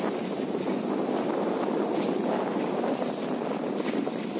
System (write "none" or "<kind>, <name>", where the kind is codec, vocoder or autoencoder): none